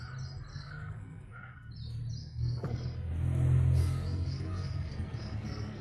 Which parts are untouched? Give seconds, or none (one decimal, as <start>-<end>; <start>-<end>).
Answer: 0.0-0.5; 1.7-2.2; 3.1-3.8